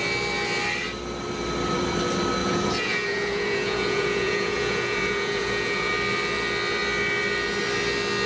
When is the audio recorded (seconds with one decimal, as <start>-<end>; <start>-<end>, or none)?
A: 0.0-2.4; 5.9-8.3